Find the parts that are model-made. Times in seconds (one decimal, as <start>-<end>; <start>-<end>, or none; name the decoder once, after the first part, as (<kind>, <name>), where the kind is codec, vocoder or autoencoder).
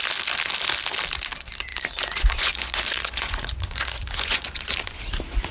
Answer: 1.7-5.0 (vocoder, Vocos)